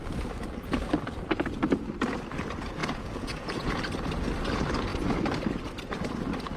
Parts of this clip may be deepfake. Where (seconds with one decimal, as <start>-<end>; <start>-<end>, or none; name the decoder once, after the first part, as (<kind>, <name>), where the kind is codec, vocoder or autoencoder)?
2.8-3.8 (vocoder, Vocos)